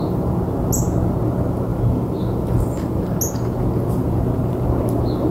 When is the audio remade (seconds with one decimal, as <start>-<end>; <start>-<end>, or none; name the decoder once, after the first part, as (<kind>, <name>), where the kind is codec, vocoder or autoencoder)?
none